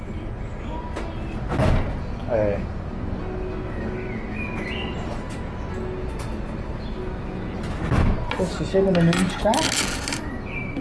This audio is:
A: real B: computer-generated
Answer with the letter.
A